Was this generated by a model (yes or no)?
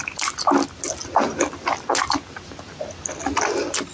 no